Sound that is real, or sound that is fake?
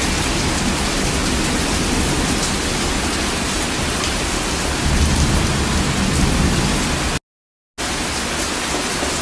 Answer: real